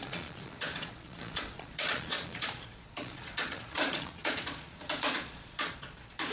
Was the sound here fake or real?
fake